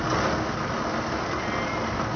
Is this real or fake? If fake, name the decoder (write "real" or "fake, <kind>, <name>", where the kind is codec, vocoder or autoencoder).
real